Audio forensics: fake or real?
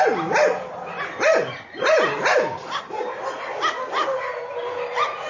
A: real